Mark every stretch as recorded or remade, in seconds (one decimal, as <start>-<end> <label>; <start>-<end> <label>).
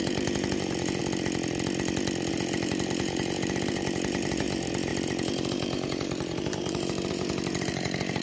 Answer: 0.0-1.0 remade; 1.0-2.3 recorded; 2.3-8.2 remade